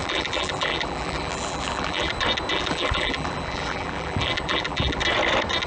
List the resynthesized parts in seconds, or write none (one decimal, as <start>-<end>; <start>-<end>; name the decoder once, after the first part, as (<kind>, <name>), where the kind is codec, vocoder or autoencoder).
0.0-2.1 (vocoder, BigVGAN v2); 2.5-5.0